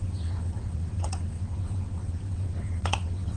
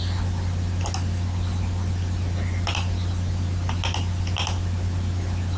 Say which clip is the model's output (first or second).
first